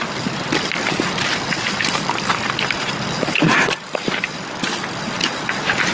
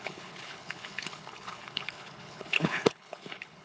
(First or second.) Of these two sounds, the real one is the first